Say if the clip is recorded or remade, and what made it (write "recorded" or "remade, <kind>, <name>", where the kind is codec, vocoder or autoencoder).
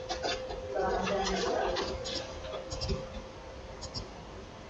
recorded